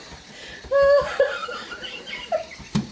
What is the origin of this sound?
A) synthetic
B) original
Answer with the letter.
A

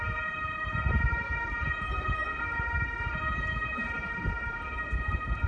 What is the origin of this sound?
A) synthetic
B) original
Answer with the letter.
A